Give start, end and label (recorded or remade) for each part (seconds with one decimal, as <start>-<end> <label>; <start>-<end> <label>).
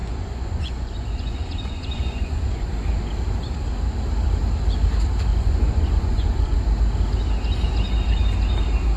0.0-2.7 remade; 2.7-5.3 recorded; 5.3-6.6 remade; 6.6-9.0 recorded